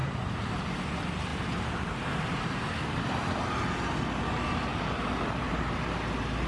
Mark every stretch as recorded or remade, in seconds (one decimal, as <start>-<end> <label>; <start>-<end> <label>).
0.0-0.5 remade; 0.5-1.3 recorded; 1.3-2.6 remade; 2.6-6.5 recorded